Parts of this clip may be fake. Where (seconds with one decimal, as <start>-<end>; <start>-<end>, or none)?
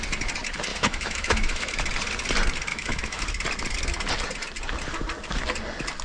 0.7-1.8; 2.7-3.2